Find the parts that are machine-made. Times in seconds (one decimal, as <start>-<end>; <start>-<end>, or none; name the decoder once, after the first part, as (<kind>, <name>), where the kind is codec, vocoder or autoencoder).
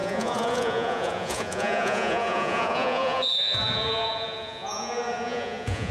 0.0-5.9 (vocoder, Vocos)